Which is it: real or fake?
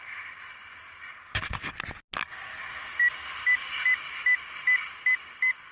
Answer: real